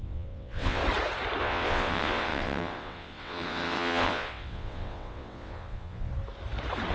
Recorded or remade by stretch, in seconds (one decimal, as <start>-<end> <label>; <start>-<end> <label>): 0.0-0.8 remade; 0.8-1.4 recorded; 1.4-6.1 remade; 6.1-6.9 recorded